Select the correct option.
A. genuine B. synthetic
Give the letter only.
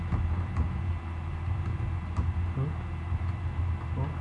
A